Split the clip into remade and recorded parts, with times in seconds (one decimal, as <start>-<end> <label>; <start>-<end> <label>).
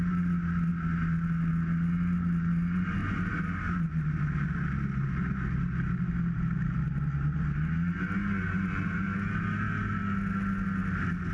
0.0-3.0 recorded; 3.0-4.2 remade; 4.2-11.3 recorded